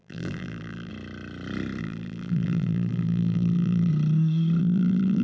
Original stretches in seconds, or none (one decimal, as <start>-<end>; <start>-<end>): 0.9-1.8; 3.9-4.6